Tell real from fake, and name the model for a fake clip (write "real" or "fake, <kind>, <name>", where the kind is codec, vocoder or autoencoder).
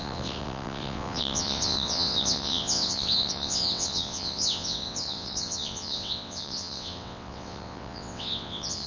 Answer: fake, vocoder, WaveNeXt